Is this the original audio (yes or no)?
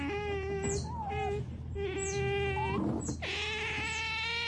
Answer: yes